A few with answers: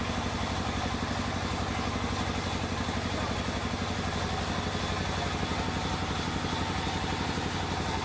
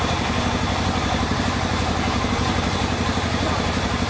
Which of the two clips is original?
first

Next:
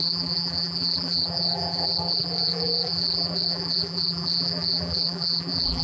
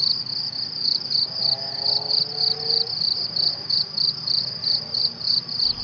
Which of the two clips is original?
second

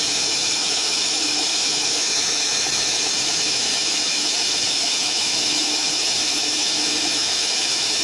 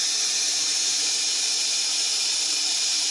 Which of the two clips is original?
second